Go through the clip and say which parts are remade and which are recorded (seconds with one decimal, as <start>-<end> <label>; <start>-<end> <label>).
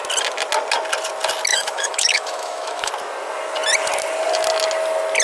0.0-1.5 recorded; 1.5-2.9 remade; 2.9-5.2 recorded